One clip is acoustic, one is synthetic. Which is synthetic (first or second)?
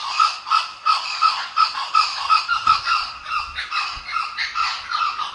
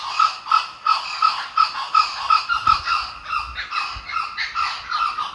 first